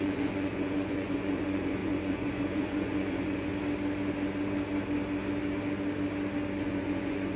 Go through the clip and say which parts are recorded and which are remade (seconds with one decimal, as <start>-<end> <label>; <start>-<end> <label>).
0.0-3.5 remade; 3.5-6.6 recorded; 6.6-7.4 remade